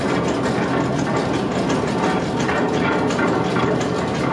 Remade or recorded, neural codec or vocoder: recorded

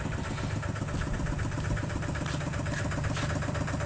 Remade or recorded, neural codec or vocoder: recorded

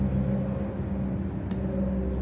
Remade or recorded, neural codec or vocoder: recorded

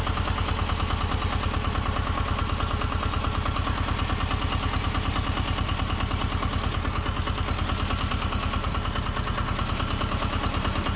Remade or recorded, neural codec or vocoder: recorded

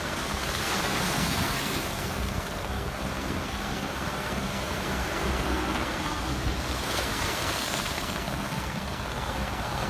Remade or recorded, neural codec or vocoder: remade, codec, SNAC